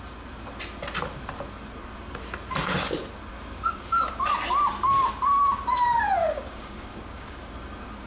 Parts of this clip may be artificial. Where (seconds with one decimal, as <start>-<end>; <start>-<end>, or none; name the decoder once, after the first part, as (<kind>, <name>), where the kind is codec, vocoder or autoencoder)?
3.3-4.1 (codec, DAC); 6.2-7.5